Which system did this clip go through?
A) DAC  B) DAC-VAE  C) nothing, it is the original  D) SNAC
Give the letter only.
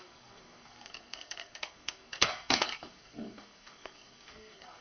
D